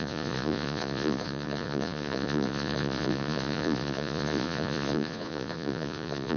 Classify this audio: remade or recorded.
remade